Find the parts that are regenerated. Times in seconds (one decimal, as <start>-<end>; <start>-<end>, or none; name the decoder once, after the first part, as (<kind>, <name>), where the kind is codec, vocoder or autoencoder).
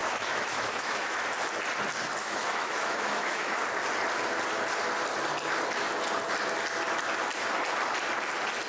0.0-1.2 (autoencoder, DAC-VAE); 2.2-3.6